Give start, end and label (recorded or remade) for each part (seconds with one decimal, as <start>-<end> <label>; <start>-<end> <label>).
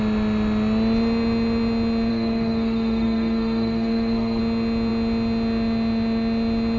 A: 0.0-2.1 recorded; 2.1-4.4 remade; 4.4-6.8 recorded